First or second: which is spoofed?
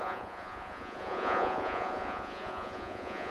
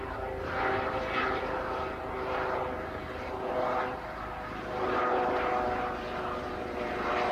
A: first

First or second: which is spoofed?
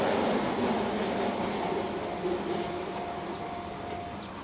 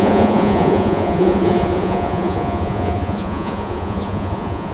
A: second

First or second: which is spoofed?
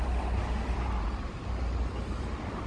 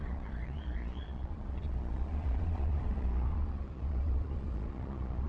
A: second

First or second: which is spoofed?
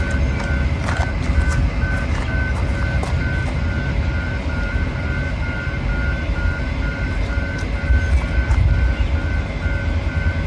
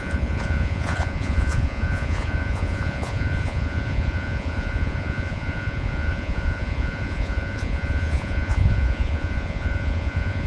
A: second